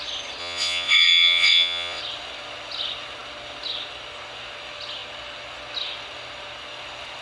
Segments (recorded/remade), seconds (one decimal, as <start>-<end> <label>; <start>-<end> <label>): 0.0-0.4 recorded; 0.4-2.0 remade; 2.0-7.2 recorded